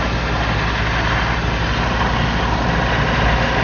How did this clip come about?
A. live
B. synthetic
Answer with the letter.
A